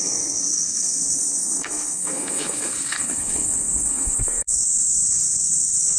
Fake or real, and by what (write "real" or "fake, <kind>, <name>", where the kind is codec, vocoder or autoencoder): fake, codec, SNAC